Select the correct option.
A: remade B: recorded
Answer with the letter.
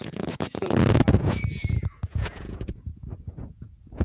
A